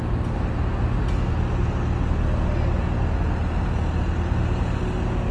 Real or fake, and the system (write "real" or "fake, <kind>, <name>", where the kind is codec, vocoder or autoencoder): real